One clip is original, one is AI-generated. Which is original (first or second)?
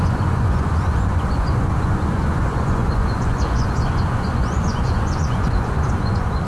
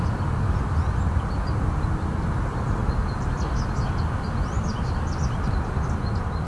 second